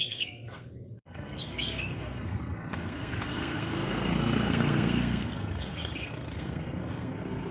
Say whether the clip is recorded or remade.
remade